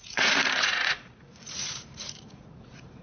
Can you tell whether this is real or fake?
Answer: fake